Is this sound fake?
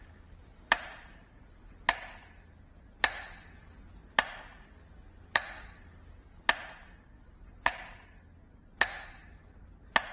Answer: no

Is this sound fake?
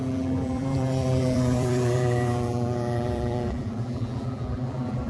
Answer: yes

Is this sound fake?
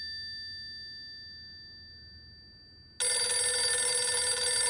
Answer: no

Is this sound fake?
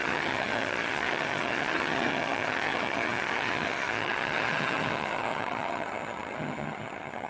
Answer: yes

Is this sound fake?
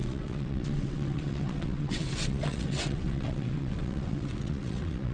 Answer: yes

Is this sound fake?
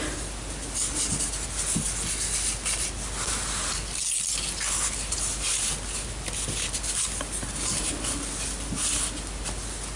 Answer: no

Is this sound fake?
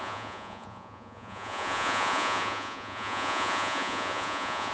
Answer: yes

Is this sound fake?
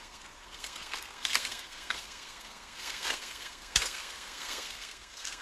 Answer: yes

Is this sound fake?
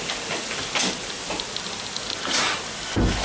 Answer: no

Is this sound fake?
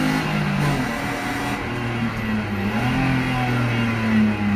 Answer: no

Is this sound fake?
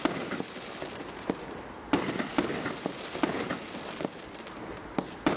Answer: no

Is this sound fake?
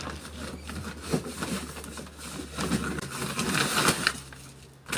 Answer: no